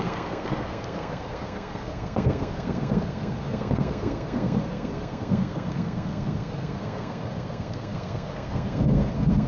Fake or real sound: fake